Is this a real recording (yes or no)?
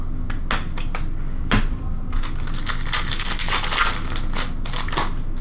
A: yes